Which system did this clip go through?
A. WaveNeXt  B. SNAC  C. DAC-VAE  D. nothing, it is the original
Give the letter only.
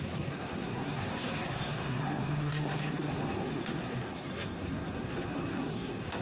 B